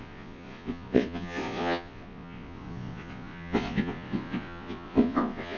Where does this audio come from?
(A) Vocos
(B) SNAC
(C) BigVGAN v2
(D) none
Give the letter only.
A